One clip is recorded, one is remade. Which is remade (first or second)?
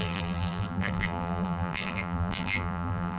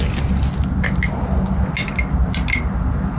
first